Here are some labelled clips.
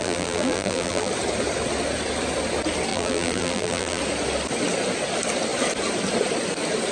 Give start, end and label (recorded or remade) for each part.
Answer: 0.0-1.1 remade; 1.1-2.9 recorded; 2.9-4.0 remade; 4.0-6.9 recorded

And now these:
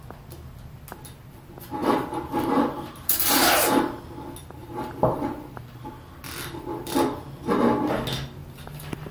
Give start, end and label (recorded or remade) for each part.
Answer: 0.0-1.8 recorded; 1.8-3.3 remade; 3.3-4.6 recorded; 4.6-6.9 remade; 6.9-8.4 recorded; 8.4-9.1 remade

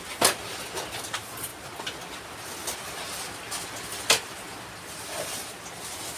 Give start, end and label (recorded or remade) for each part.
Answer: 0.0-6.2 recorded

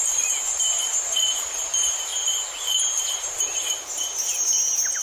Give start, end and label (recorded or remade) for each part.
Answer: 0.0-2.1 remade; 2.1-3.0 recorded; 3.0-5.0 remade

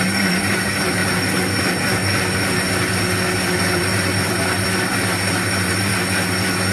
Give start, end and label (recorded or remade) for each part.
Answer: 0.0-1.0 remade; 1.0-3.6 recorded; 3.6-5.9 remade; 5.9-6.7 recorded